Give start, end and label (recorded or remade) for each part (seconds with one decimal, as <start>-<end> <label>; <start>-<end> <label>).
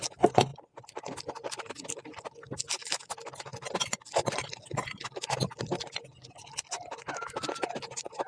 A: 0.0-8.3 recorded